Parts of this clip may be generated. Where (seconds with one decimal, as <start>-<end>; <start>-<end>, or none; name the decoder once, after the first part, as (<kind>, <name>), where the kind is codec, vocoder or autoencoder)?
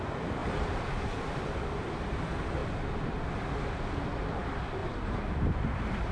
0.4-1.0 (vocoder, BigVGAN v2); 2.6-3.3; 4.8-6.1